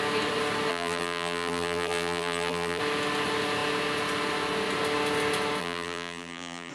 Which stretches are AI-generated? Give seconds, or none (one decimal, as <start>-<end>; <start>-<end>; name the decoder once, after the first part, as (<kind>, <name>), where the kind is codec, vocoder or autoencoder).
0.7-2.8 (vocoder, BigVGAN v2); 5.6-6.7